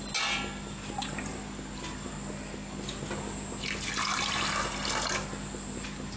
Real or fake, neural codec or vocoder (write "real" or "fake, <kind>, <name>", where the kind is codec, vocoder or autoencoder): real